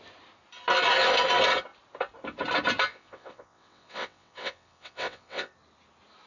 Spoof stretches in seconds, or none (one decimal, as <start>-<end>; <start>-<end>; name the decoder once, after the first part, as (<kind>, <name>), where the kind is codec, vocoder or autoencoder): 2.9-5.5 (vocoder, WaveNeXt)